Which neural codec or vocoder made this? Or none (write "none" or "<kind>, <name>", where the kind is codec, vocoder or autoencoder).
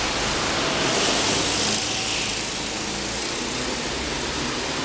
none